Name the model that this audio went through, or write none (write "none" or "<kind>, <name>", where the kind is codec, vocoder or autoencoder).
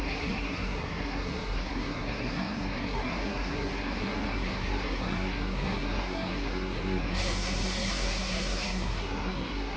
codec, SNAC